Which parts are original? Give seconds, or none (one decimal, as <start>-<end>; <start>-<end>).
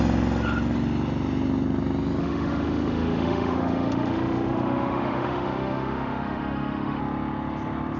0.0-2.2; 7.0-8.0